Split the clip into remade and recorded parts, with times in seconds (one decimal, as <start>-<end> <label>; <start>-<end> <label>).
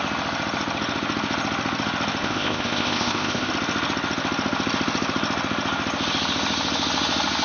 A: 0.0-2.2 recorded; 2.2-3.5 remade; 3.5-7.4 recorded